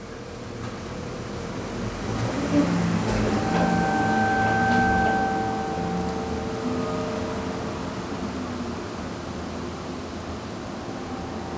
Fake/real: real